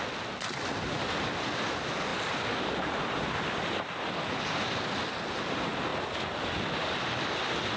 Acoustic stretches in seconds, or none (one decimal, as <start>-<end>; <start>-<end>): 0.0-7.8